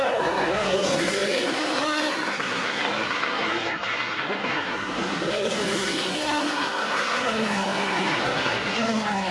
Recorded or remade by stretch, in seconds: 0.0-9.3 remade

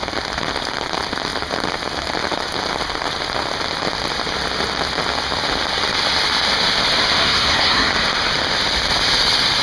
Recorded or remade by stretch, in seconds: 0.0-7.2 recorded; 7.2-7.9 remade; 7.9-9.6 recorded

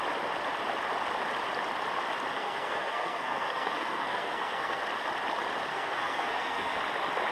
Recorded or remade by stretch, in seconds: 0.0-2.3 recorded; 2.3-4.8 remade; 4.8-5.7 recorded; 5.7-6.8 remade; 6.8-7.3 recorded

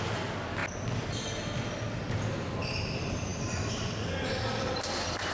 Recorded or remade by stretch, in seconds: 0.0-5.3 recorded

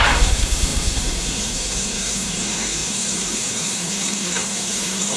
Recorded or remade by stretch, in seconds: 0.0-5.2 remade

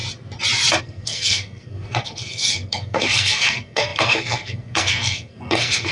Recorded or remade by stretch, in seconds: 0.0-0.8 recorded; 0.8-5.9 remade

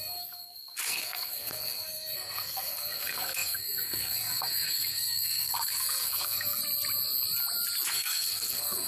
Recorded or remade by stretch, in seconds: 0.0-6.6 remade; 6.6-7.9 recorded; 7.9-8.9 remade